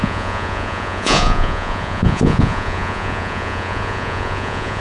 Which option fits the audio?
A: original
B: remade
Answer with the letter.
B